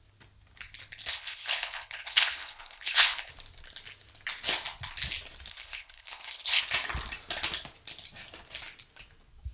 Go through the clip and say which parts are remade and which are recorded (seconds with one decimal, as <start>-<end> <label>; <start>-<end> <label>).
0.0-1.1 recorded; 1.1-3.3 remade; 3.3-5.5 recorded; 5.5-6.6 remade; 6.6-9.5 recorded